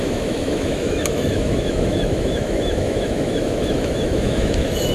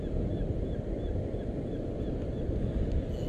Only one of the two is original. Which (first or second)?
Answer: second